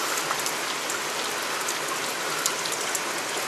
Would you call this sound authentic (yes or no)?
yes